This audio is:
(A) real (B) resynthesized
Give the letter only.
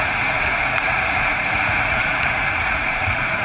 B